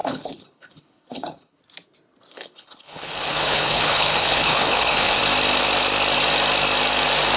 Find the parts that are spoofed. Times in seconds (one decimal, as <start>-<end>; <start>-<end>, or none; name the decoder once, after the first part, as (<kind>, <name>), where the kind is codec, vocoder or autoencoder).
0.0-1.6 (codec, HILCodec); 2.3-5.2